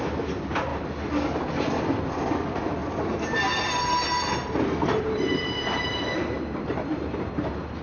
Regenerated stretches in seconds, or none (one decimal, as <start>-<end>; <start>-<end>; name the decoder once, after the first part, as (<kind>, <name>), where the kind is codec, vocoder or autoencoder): 0.0-0.7 (vocoder, BigVGAN v2); 1.8-2.8; 4.7-7.8